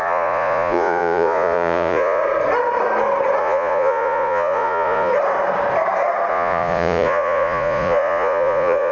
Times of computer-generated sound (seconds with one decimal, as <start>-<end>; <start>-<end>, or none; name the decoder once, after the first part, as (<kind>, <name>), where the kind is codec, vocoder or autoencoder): 0.0-2.2 (vocoder, Vocos); 3.4-5.1; 6.3-8.9